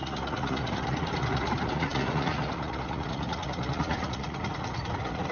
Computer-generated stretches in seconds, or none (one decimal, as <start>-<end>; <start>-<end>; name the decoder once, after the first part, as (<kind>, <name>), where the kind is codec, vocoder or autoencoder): 0.0-5.3 (vocoder, Vocos)